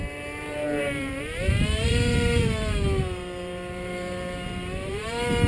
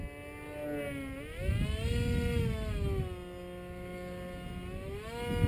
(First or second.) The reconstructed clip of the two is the first